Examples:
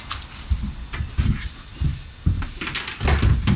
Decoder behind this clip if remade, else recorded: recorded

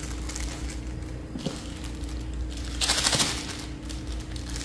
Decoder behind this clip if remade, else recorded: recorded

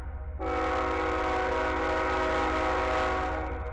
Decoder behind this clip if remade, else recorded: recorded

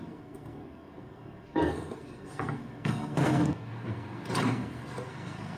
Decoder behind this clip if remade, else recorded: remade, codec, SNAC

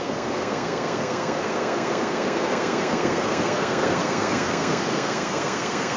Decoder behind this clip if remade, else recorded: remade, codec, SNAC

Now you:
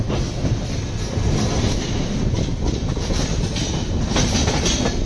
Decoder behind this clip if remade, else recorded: recorded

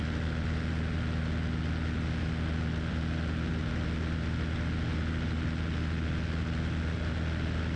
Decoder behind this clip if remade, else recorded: recorded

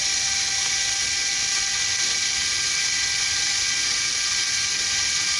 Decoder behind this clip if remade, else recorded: recorded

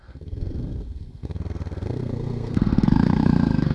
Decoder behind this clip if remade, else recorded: remade, codec, SNAC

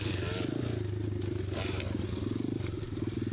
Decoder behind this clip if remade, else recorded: recorded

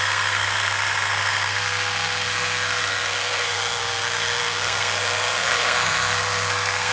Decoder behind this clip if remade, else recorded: remade, codec, SNAC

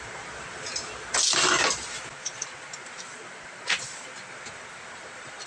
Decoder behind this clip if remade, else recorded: recorded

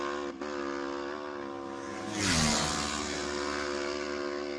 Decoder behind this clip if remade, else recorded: recorded